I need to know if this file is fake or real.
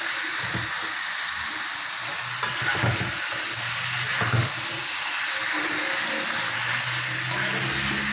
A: real